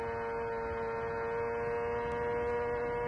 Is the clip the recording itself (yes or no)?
yes